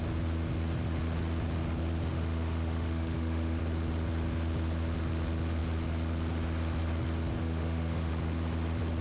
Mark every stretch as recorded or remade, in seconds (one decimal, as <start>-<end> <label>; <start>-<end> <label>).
0.0-2.1 recorded; 2.1-3.6 remade; 3.6-7.4 recorded; 7.4-8.1 remade; 8.1-9.0 recorded